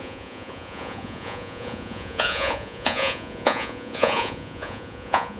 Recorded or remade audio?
remade